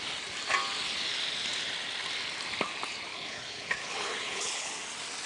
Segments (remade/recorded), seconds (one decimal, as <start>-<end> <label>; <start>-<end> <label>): 0.0-3.1 recorded; 3.1-4.7 remade; 4.7-5.3 recorded